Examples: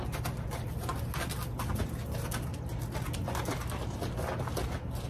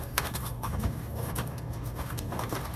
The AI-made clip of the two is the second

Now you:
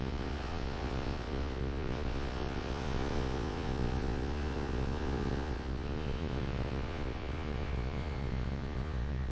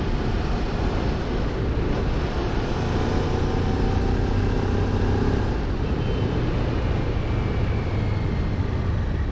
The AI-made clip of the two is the first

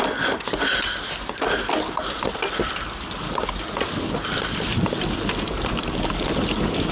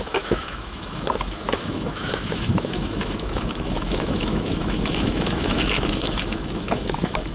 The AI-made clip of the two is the second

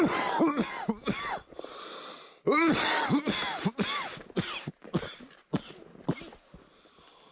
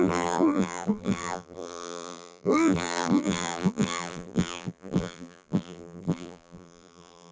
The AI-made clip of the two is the second